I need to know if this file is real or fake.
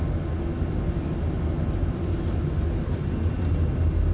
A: real